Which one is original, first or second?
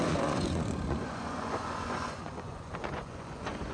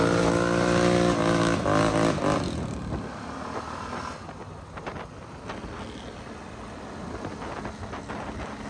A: second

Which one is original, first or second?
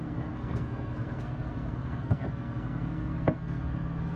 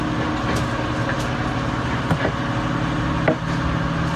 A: second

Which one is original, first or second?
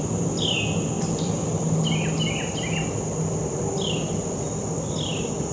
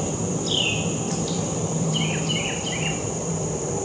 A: first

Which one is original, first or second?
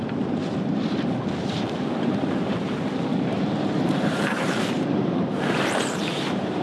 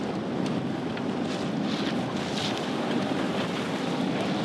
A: second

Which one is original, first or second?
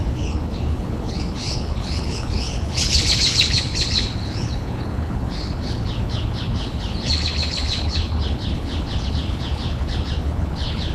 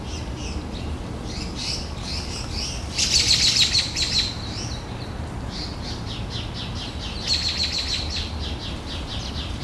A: second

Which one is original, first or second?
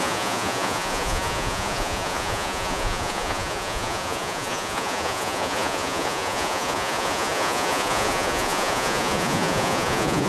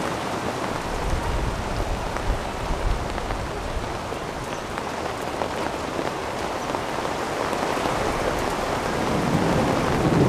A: second